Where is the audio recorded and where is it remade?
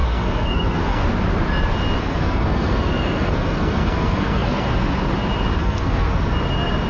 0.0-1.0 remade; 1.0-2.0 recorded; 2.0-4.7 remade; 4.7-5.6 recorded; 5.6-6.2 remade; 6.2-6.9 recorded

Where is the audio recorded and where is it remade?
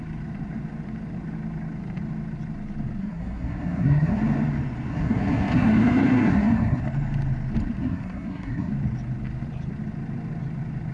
0.0-3.0 recorded; 3.0-4.2 remade; 4.2-4.9 recorded; 4.9-6.8 remade; 6.8-7.8 recorded; 7.8-8.7 remade; 8.7-10.9 recorded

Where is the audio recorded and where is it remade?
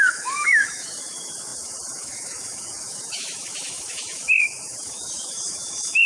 0.0-6.1 remade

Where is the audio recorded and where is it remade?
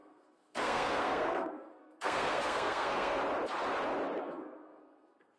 0.0-3.2 remade; 3.2-4.2 recorded; 4.2-5.4 remade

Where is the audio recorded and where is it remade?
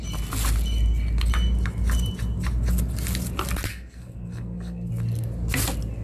0.0-3.7 recorded; 3.7-4.9 remade; 4.9-6.0 recorded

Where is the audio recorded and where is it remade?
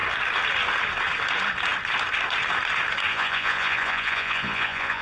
0.0-3.1 recorded; 3.1-5.0 remade